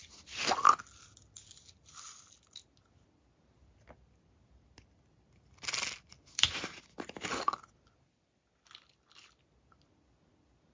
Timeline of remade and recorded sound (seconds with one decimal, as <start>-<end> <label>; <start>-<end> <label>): 0.0-10.7 recorded